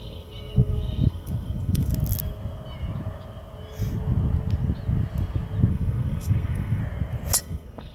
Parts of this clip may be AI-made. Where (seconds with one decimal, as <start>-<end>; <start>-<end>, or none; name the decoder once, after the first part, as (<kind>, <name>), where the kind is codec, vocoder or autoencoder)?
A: 0.0-1.9 (codec, SNAC); 5.7-6.8; 7.4-7.9